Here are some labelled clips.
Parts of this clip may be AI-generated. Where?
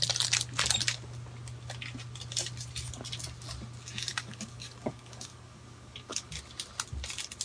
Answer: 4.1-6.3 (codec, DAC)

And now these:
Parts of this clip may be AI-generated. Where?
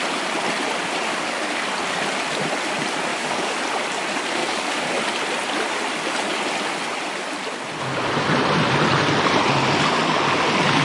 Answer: 1.1-1.7 (codec, DAC); 3.1-3.6; 4.4-4.9